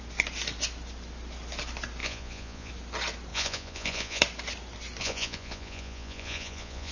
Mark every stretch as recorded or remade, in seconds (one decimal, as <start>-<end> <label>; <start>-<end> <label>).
0.0-2.0 recorded; 2.0-2.7 remade; 2.7-3.3 recorded; 3.3-4.2 remade; 4.2-5.0 recorded; 5.0-6.9 remade